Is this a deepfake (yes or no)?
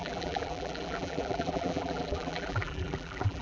yes